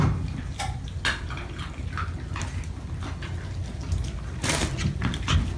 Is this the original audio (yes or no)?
yes